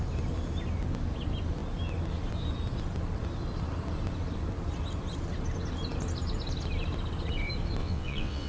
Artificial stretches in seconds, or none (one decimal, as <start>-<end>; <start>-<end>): 7.8-8.5